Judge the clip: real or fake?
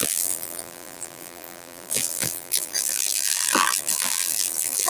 fake